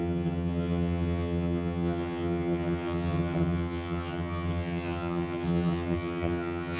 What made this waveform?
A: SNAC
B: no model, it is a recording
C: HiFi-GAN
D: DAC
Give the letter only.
C